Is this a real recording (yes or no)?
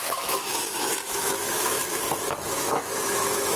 no